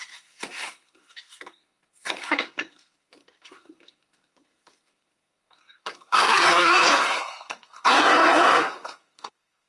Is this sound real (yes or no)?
no